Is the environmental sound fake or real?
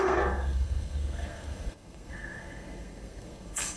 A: fake